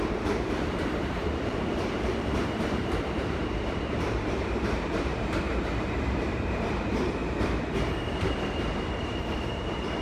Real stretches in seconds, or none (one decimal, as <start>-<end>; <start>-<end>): 5.1-6.2